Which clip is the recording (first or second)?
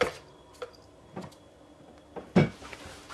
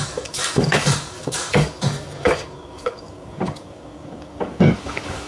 first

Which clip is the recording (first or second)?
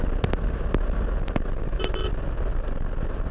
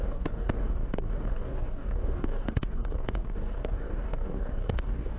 first